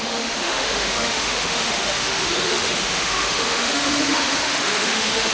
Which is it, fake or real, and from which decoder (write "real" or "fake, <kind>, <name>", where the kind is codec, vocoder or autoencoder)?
fake, autoencoder, DAC-VAE